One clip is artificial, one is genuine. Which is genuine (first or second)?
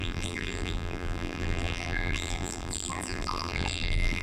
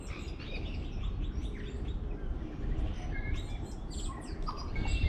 second